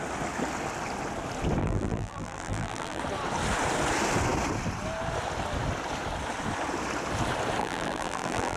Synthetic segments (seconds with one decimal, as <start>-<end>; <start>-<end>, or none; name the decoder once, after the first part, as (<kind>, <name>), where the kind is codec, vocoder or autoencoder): 1.6-3.0 (vocoder, BigVGAN v2); 7.6-8.6